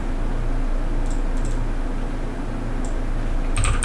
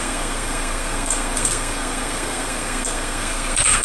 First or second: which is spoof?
second